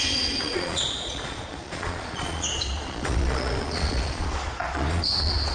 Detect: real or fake fake